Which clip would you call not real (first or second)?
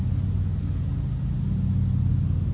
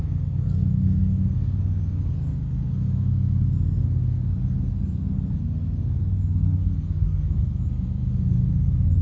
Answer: second